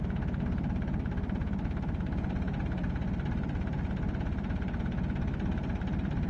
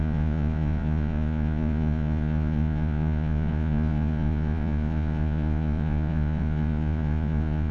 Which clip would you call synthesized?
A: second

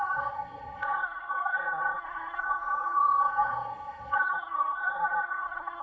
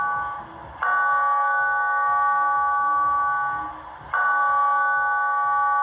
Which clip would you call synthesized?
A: first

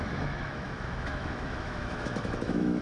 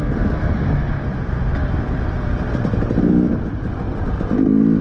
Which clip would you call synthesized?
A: first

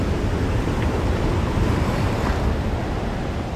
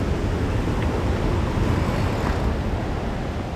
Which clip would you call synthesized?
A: first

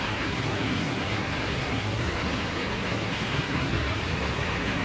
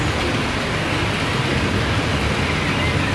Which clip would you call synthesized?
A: first